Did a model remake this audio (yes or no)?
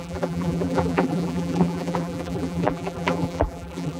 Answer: yes